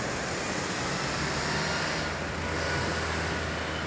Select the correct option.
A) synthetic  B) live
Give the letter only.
B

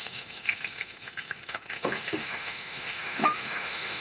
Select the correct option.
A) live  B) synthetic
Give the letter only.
B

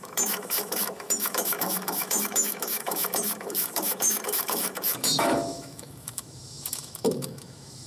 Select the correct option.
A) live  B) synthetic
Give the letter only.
B